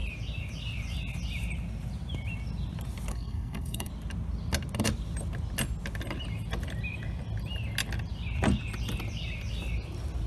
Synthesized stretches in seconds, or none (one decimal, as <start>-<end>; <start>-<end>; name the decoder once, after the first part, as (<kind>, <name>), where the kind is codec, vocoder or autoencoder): 3.1-3.9 (codec, SNAC)